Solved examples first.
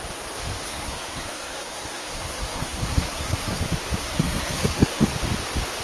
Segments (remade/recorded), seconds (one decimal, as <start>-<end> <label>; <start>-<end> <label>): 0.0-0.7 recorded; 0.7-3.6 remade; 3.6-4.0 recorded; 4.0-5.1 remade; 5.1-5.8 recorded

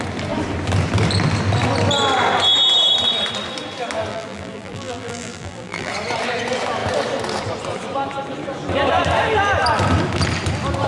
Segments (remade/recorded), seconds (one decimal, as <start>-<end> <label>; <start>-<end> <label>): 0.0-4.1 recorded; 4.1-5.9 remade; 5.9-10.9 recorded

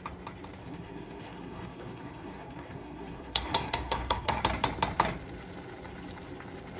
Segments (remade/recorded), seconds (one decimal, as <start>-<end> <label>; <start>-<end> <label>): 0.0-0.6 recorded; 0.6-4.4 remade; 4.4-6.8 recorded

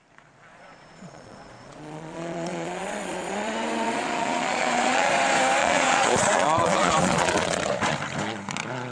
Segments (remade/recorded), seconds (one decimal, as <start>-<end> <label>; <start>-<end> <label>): 0.0-0.5 recorded; 0.5-5.1 remade; 5.1-5.6 recorded; 5.6-7.6 remade; 7.6-8.9 recorded